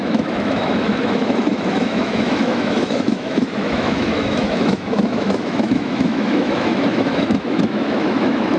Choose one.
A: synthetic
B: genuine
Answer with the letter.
A